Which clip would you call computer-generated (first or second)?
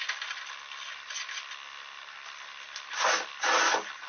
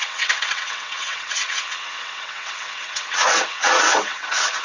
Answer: second